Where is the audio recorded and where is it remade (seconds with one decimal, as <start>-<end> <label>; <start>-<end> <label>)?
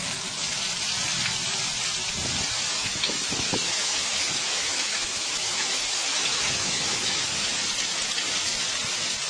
0.0-2.8 recorded; 2.8-7.5 remade; 7.5-9.3 recorded